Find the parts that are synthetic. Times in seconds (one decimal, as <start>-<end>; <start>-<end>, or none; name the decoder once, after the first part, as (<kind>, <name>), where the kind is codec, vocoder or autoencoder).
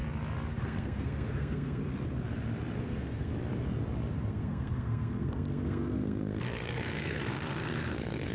0.6-1.8 (codec, SNAC); 2.8-3.3; 4.3-8.3